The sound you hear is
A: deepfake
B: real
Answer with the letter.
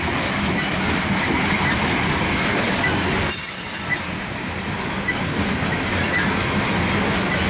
B